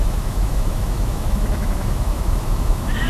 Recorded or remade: remade